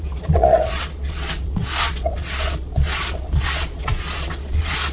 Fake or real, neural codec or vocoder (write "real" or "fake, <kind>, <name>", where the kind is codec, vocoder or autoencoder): fake, vocoder, Vocos